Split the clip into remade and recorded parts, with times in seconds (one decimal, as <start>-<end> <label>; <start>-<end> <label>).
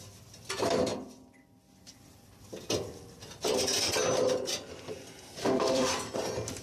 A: 0.0-5.4 recorded; 5.4-5.9 remade; 5.9-6.6 recorded